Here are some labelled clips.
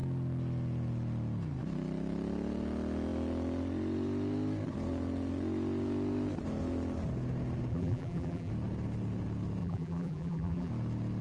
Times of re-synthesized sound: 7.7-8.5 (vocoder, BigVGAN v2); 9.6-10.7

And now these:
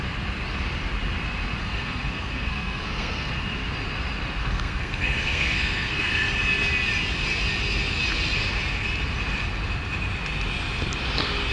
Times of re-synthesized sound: 1.6-3.3 (codec, SNAC); 4.4-6.3

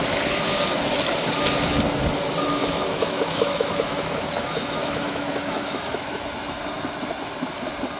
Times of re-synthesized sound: 2.6-6.2 (autoencoder, DAC-VAE)